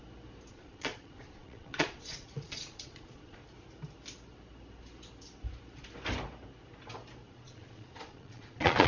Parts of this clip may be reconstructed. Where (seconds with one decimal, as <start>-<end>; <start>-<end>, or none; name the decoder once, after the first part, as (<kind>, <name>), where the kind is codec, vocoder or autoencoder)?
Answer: 0.5-3.4 (vocoder, Vocos); 7.3-8.9